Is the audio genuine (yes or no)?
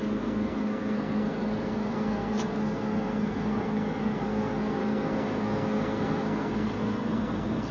no